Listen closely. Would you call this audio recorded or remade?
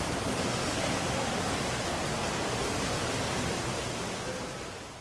recorded